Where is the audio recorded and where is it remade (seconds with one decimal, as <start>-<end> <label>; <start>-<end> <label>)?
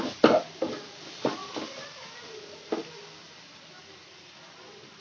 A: 0.0-5.0 recorded